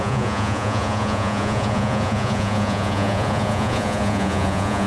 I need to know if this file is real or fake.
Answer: fake